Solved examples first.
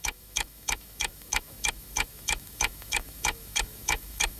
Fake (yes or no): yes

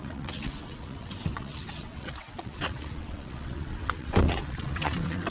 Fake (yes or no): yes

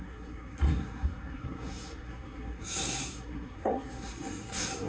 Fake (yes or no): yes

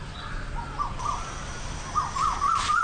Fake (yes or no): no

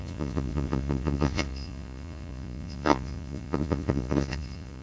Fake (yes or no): yes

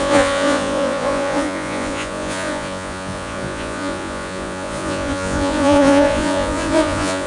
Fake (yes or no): yes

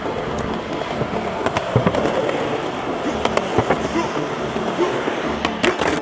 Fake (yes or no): no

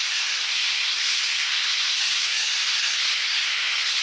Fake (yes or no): yes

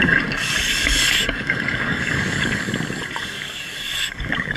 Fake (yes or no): yes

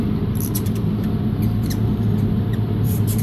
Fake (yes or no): yes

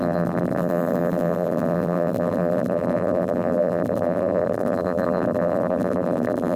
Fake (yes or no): yes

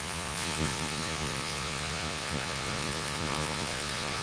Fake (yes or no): yes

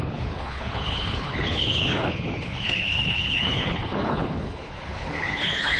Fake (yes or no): yes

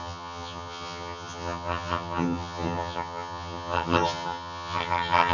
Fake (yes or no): yes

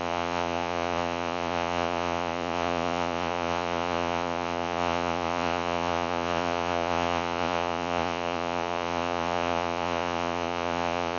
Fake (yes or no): yes